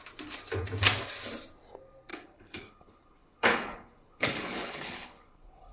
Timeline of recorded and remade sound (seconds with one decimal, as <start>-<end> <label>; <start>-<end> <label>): 0.0-2.1 recorded; 2.1-5.7 remade